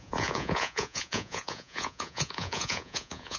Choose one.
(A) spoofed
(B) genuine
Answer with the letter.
A